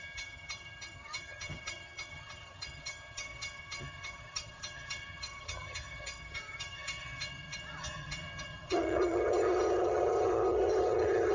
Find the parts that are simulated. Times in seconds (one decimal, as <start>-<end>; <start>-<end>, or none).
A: 0.0-11.3